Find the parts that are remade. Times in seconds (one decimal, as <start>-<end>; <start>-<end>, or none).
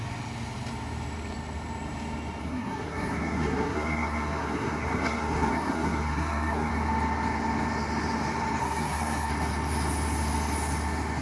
2.4-6.7; 8.6-9.3